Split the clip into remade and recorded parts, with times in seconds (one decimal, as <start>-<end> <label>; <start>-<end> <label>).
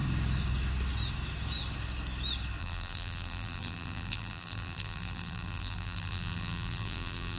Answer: 0.0-2.6 recorded; 2.6-7.4 remade